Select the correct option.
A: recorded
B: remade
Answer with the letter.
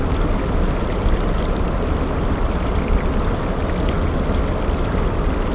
A